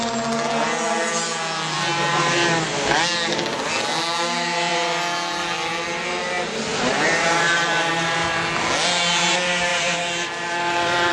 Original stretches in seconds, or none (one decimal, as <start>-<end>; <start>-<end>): 0.0-6.7; 7.9-9.7